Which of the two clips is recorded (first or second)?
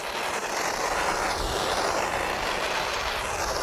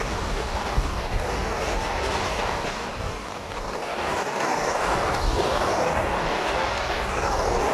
first